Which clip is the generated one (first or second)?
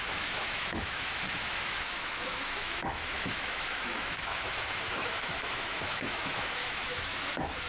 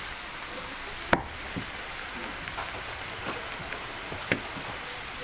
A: first